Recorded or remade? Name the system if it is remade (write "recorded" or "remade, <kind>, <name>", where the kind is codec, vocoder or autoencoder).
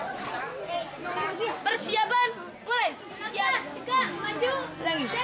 recorded